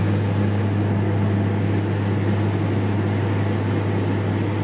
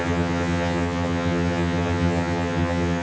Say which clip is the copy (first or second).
second